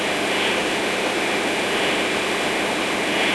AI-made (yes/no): yes